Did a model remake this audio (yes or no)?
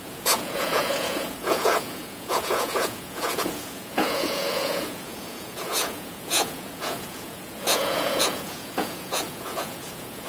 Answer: yes